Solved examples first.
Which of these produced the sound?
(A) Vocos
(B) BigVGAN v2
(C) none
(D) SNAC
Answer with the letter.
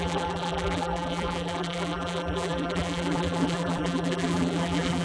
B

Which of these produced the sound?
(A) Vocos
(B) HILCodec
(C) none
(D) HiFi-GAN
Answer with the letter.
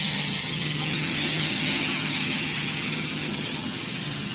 D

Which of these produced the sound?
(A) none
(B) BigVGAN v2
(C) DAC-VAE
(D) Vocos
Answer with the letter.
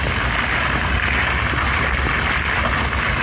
A